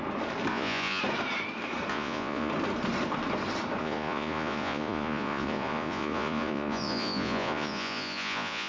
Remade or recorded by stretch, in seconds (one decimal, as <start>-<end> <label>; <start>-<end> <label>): 0.0-0.5 recorded; 0.5-1.0 remade; 1.0-1.9 recorded; 1.9-2.5 remade; 2.5-3.8 recorded; 3.8-8.7 remade